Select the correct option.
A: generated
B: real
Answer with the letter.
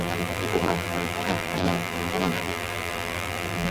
A